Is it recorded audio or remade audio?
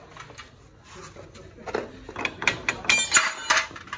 recorded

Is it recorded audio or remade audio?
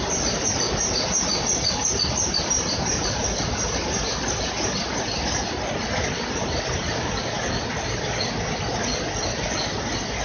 recorded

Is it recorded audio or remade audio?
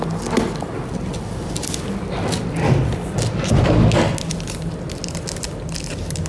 recorded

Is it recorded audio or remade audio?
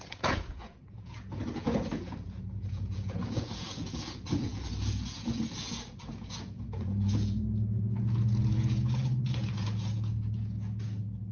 remade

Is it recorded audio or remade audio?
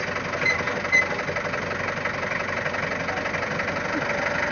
recorded